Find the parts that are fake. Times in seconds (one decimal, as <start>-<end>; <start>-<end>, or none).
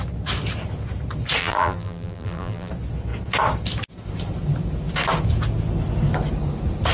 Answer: 1.4-2.7